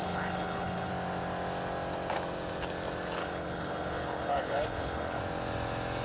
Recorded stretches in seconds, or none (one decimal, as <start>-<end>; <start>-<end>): 0.9-3.2; 5.2-6.0